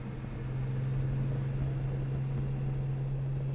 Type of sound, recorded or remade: recorded